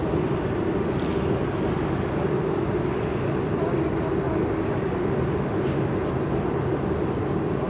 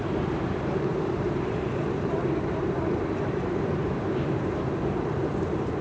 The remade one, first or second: second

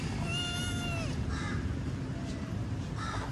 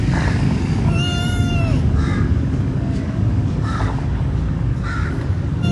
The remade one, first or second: second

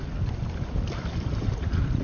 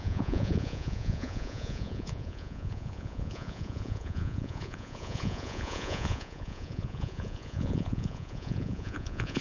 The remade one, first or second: second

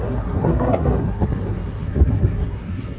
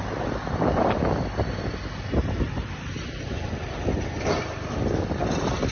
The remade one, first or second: first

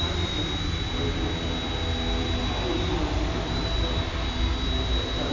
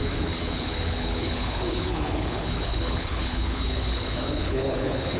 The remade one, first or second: second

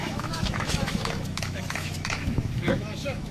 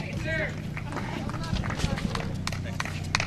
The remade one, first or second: first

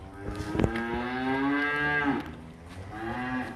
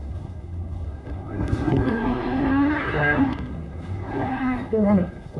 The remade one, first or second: second